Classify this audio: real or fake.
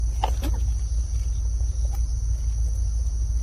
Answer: real